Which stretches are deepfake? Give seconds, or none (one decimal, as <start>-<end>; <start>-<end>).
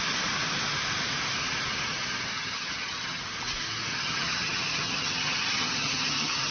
2.3-3.2; 3.9-6.5